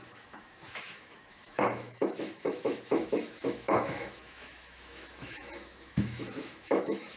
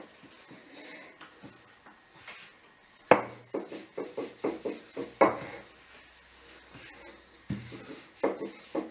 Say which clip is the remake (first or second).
first